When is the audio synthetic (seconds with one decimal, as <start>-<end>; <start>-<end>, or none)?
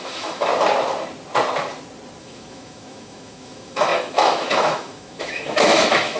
0.0-0.5; 2.2-6.2